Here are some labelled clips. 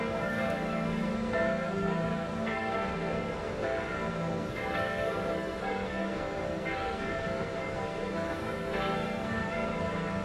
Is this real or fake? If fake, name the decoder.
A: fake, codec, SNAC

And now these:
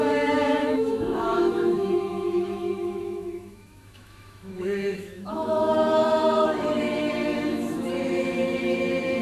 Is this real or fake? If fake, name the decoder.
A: fake, autoencoder, DAC-VAE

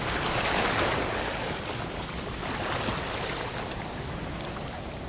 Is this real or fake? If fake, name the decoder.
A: real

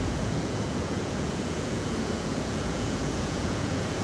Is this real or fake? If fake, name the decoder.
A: fake, vocoder, Vocos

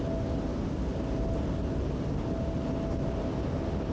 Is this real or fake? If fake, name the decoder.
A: real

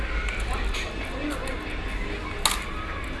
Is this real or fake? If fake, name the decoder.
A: real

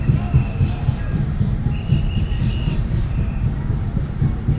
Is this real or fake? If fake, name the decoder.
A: fake, vocoder, BigVGAN v2